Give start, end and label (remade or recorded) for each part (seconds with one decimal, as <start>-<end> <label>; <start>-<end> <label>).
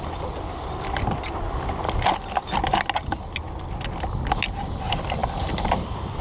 0.0-6.2 recorded